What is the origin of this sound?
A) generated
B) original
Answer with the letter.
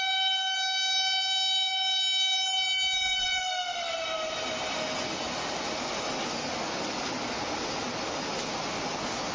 B